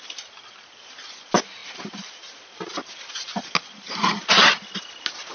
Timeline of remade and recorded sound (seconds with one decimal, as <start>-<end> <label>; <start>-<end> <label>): 0.0-5.3 recorded